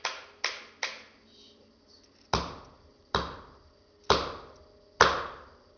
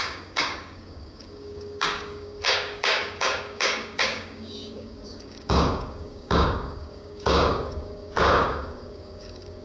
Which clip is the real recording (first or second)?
first